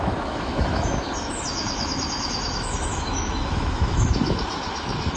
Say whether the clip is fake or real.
fake